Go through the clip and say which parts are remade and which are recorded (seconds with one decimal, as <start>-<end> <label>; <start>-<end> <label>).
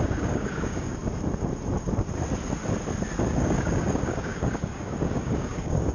0.0-1.0 remade; 1.0-3.3 recorded; 3.3-5.9 remade